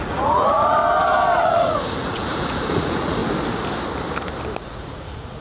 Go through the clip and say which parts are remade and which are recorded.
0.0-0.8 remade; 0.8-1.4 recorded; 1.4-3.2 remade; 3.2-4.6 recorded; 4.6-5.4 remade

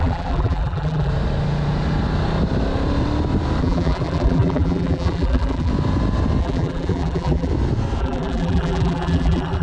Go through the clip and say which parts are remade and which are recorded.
0.0-1.1 remade; 1.1-3.6 recorded; 3.6-5.7 remade; 5.7-6.4 recorded; 6.4-7.5 remade; 7.5-8.0 recorded; 8.0-9.6 remade

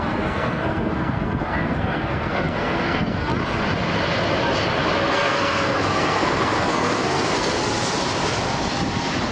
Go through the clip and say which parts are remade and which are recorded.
0.0-3.3 remade; 3.3-5.1 recorded; 5.1-7.6 remade; 7.6-9.3 recorded

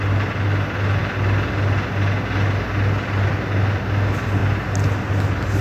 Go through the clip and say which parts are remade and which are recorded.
0.0-5.6 recorded

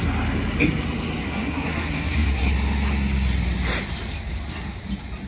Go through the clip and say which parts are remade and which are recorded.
0.0-1.2 recorded; 1.2-2.5 remade; 2.5-5.3 recorded